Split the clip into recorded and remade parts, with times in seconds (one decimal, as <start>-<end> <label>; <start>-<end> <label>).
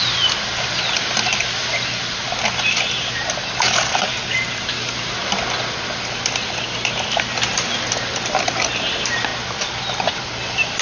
0.0-10.8 recorded